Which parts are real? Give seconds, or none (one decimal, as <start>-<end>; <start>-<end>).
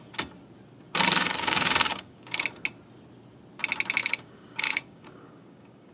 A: 0.0-1.2; 2.4-4.0